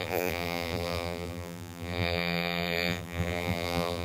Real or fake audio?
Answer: fake